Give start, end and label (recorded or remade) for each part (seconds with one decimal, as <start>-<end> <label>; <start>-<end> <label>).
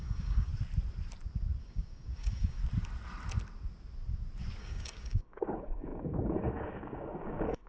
0.0-0.5 remade; 0.5-1.6 recorded; 1.6-2.6 remade; 2.6-4.6 recorded; 4.6-7.7 remade